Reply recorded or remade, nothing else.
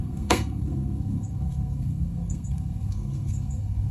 remade